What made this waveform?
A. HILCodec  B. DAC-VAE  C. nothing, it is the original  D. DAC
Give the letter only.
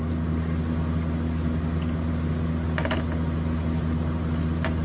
C